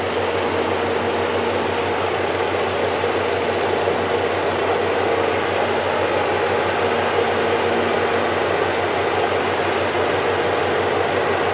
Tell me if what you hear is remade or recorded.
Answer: recorded